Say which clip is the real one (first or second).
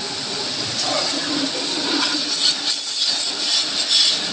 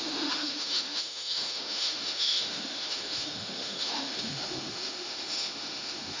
first